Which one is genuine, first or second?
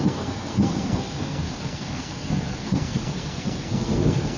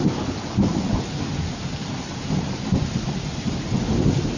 second